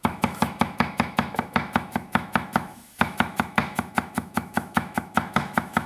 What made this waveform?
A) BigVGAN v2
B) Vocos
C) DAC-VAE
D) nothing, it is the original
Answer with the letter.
C